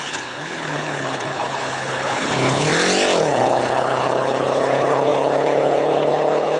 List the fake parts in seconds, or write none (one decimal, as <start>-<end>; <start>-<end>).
0.0-2.7; 3.2-6.6